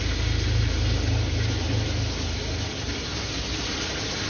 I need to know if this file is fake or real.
real